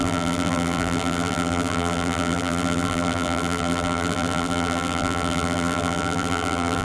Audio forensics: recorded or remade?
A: remade